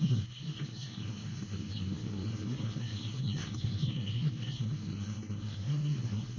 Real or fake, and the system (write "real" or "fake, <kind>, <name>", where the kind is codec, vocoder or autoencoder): fake, codec, SNAC